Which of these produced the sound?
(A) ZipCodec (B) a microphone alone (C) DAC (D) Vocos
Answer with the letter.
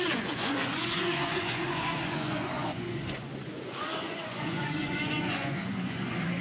D